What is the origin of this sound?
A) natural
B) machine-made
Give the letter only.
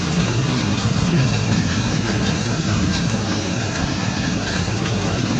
B